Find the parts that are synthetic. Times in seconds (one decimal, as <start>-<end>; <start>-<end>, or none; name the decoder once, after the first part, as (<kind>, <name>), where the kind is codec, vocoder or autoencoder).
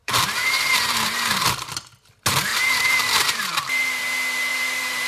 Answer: 0.0-1.9 (vocoder, BigVGAN v2); 2.5-4.0; 4.5-5.1